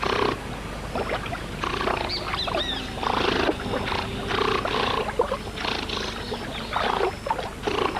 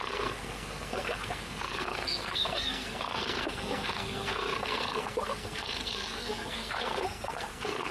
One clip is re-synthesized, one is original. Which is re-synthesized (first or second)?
second